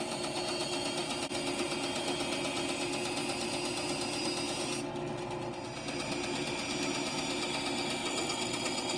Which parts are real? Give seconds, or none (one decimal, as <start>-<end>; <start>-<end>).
0.0-8.0